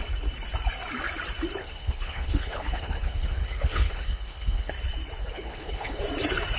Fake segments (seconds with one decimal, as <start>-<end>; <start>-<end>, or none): 1.6-4.7; 5.2-6.0